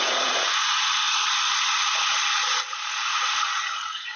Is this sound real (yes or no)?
no